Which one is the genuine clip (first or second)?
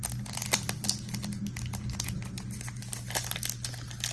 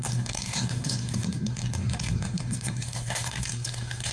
first